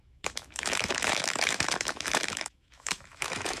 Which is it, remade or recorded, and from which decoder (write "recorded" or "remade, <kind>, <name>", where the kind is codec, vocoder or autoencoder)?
remade, autoencoder, DAC-VAE